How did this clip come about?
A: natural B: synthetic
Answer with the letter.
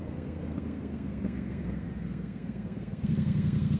B